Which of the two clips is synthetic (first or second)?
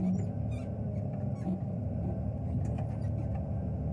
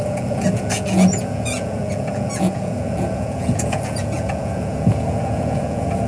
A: second